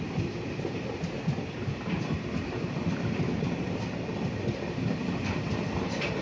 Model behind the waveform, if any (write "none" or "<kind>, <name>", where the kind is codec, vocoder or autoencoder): none